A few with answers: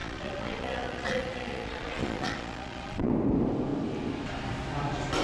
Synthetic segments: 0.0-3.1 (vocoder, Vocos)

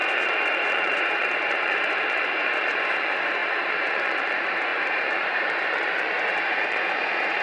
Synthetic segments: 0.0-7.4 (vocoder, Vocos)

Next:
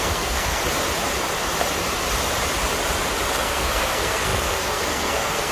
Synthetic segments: 0.0-0.6 (codec, SNAC); 3.3-5.5

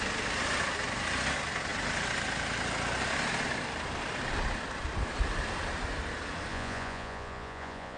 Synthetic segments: 6.5-8.0 (vocoder, Vocos)

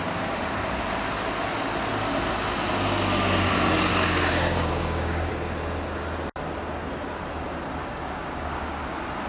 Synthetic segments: 3.9-5.3 (codec, DAC); 7.8-8.8

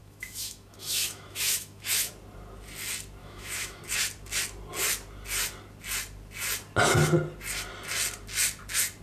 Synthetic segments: 0.0-2.1 (autoencoder, DAC-VAE); 3.2-3.8

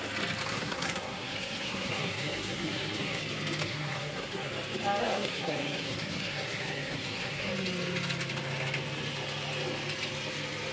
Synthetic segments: 0.5-3.2 (codec, SNAC); 3.6-4.5; 5.0-7.5

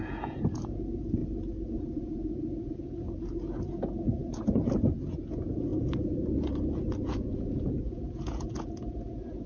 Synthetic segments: 0.0-9.5 (vocoder, Vocos)